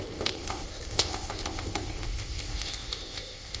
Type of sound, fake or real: fake